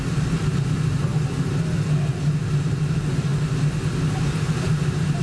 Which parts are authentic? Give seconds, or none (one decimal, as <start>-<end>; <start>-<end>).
0.0-5.2